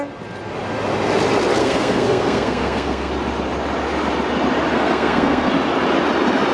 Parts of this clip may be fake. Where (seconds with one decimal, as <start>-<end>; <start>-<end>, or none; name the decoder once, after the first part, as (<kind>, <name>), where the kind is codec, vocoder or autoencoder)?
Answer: 1.6-3.1 (codec, SNAC); 4.7-5.5